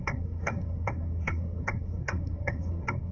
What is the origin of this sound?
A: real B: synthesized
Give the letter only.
B